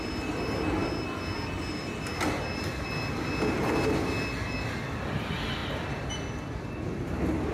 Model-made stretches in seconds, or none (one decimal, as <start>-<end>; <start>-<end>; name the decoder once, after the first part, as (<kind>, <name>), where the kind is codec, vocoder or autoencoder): none